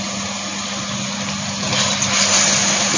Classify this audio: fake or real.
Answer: real